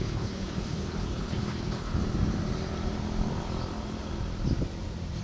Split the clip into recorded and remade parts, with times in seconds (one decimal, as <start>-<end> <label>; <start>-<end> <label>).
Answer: 0.0-2.0 remade; 2.0-5.2 recorded

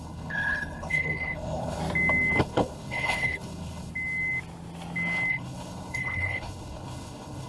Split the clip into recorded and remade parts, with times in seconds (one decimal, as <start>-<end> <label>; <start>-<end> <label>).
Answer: 0.0-1.8 remade; 1.8-2.4 recorded; 2.4-3.9 remade; 3.9-5.3 recorded; 5.3-7.5 remade

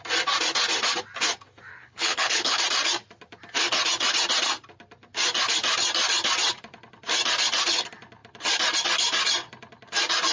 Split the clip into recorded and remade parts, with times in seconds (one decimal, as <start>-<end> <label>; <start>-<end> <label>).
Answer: 0.0-1.7 recorded; 1.7-2.6 remade; 2.6-10.3 recorded

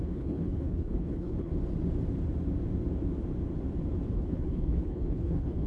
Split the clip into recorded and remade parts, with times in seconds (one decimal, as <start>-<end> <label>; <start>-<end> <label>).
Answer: 0.0-1.5 remade; 1.5-4.1 recorded; 4.1-5.7 remade

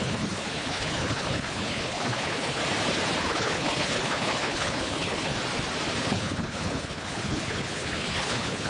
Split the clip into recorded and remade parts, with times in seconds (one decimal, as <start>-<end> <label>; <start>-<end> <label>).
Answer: 0.0-2.6 remade; 2.6-3.2 recorded; 3.2-5.3 remade; 5.3-6.0 recorded; 6.0-8.7 remade

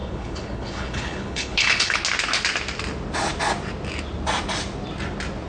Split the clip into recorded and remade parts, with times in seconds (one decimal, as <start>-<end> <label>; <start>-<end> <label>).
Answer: 0.0-2.0 remade; 2.0-5.5 recorded

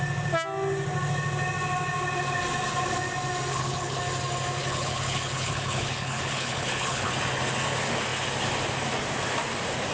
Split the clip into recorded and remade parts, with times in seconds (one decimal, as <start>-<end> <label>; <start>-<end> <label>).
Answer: 0.0-3.5 recorded; 3.5-4.0 remade; 4.0-4.6 recorded; 4.6-7.1 remade; 7.1-9.9 recorded

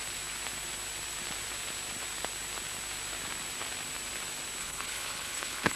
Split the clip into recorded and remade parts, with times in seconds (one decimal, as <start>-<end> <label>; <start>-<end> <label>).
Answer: 0.0-4.6 recorded; 4.6-5.8 remade